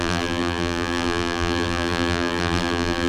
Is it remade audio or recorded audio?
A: remade